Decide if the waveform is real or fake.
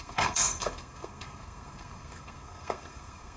fake